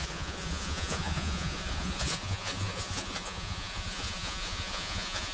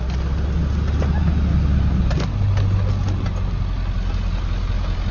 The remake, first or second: first